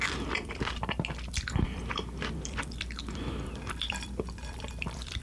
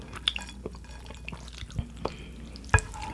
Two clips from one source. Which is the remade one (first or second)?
first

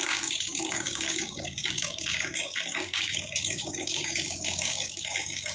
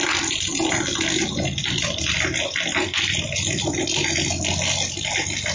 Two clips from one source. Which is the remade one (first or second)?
first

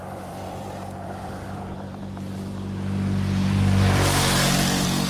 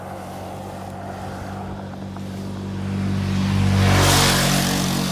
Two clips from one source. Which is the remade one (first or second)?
first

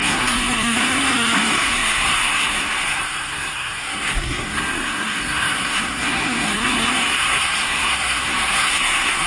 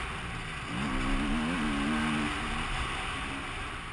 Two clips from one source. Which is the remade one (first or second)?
first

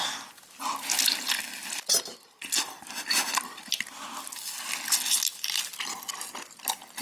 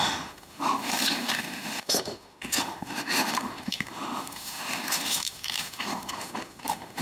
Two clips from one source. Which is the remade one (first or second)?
second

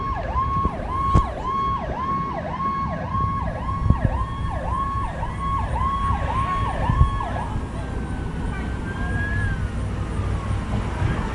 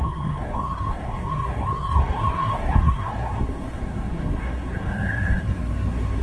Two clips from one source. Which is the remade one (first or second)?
second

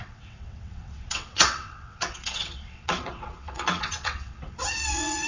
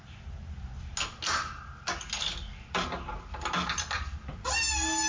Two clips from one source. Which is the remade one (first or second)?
first